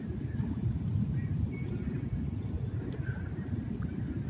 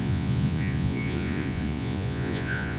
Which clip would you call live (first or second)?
first